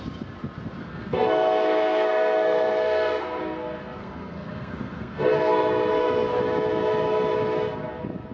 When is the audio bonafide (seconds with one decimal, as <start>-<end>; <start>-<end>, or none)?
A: 0.0-0.8; 3.4-4.0; 6.4-8.3